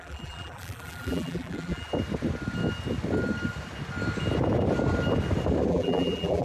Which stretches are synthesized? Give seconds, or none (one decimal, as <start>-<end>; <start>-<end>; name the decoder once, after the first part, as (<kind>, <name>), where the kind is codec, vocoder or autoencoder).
0.0-1.9 (vocoder, BigVGAN v2); 5.7-6.4